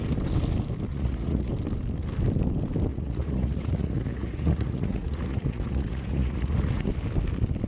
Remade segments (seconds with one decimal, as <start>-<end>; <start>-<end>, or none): 0.9-1.5; 2.9-6.9